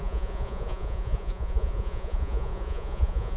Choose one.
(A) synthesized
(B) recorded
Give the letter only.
A